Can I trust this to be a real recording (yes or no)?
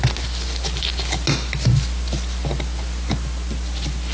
yes